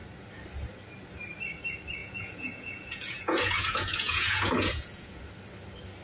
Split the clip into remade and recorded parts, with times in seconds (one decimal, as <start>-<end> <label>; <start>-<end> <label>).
0.0-2.0 recorded; 2.0-5.2 remade; 5.2-6.0 recorded